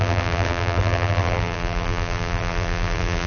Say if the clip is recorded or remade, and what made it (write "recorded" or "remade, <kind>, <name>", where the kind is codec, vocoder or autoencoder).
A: remade, vocoder, BigVGAN v2